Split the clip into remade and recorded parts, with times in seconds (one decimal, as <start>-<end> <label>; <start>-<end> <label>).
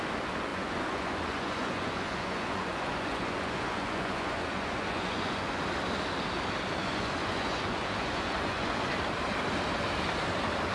0.0-0.5 recorded; 0.5-5.6 remade; 5.6-6.8 recorded; 6.8-8.9 remade; 8.9-10.7 recorded